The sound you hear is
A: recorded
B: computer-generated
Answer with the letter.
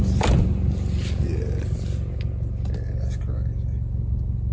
A